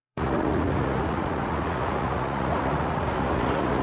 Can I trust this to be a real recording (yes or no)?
no